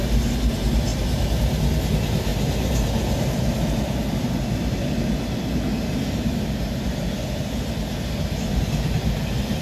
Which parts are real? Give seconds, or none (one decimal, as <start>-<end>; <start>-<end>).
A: 0.0-9.6